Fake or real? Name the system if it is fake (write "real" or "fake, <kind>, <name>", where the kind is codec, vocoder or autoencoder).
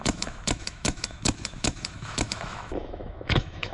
fake, autoencoder, DAC-VAE